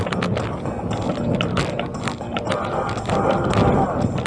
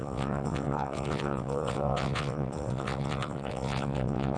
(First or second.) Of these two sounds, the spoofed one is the second